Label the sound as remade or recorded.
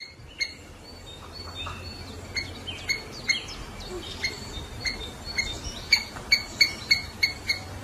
recorded